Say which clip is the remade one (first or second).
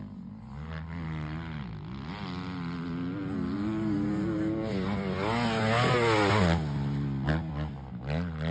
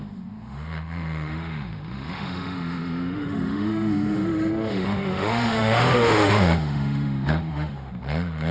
second